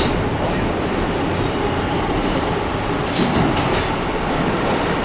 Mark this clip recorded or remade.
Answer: remade